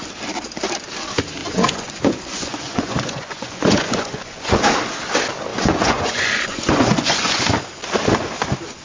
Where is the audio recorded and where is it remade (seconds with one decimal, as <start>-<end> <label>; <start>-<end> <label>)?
0.0-1.4 recorded; 1.4-4.6 remade; 4.6-5.5 recorded; 5.5-7.4 remade; 7.4-8.8 recorded